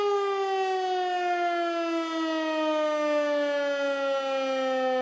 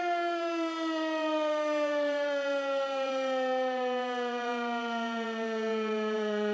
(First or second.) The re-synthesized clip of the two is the second